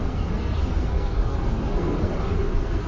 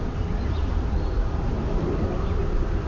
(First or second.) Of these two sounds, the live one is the second